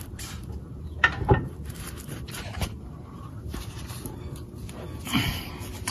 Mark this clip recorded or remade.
remade